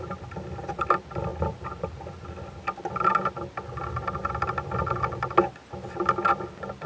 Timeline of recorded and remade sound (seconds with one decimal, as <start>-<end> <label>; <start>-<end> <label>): 0.0-6.9 recorded